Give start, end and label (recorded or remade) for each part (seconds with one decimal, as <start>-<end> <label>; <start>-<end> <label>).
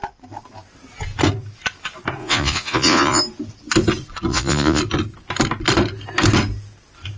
0.0-2.2 recorded; 2.2-3.2 remade; 3.2-4.3 recorded; 4.3-4.8 remade; 4.8-7.2 recorded